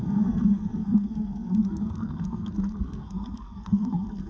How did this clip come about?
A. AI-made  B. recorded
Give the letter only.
A